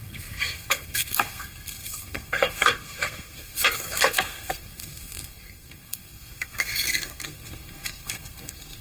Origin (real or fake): fake